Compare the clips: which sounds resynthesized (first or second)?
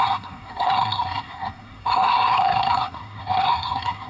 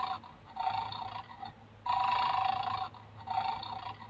first